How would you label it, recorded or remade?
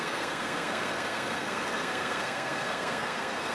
remade